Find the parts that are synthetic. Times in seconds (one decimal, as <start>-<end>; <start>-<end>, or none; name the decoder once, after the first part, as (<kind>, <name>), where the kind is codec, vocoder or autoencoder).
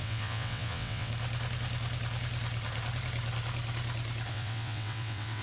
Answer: 0.0-1.1 (vocoder, WaveNeXt); 4.3-5.4